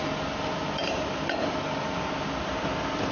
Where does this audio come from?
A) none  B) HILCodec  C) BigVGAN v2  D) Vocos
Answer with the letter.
A